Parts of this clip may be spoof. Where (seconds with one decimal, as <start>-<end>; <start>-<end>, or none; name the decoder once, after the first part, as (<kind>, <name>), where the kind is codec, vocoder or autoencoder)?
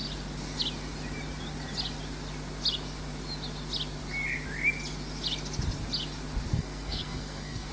6.5-7.7 (codec, SNAC)